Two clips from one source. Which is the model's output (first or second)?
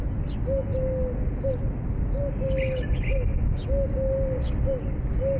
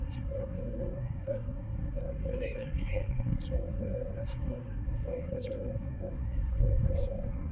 second